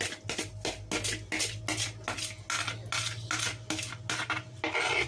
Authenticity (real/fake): real